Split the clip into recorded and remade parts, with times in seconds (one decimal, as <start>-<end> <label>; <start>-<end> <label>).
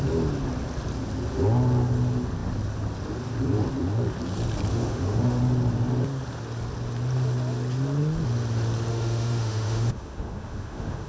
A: 0.0-4.7 recorded; 4.7-5.4 remade; 5.4-8.9 recorded; 8.9-11.1 remade